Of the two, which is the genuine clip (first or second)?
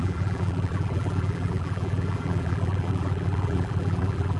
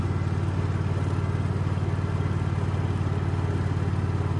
second